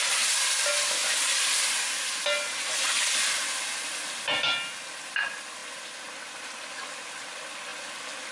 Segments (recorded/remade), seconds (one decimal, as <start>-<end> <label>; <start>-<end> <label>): 0.0-8.3 recorded